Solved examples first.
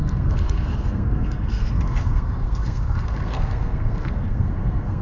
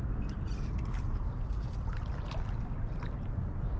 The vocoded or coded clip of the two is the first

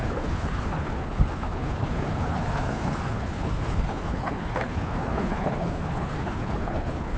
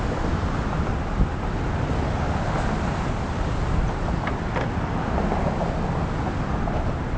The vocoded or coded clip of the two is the first